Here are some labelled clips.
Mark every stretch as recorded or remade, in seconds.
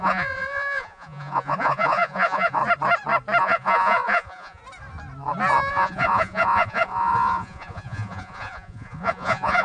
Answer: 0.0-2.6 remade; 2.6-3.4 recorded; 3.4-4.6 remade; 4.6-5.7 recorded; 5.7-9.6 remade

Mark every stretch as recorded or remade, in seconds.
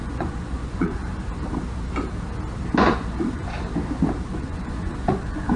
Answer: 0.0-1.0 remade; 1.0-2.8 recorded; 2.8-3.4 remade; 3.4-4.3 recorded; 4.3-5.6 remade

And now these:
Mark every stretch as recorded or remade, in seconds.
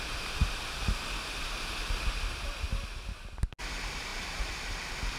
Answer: 0.0-5.2 recorded